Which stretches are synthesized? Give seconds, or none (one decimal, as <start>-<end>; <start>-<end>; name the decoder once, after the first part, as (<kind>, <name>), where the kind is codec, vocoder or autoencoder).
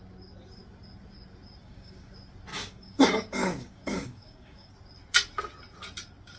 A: 1.6-2.1 (codec, DAC); 2.5-4.7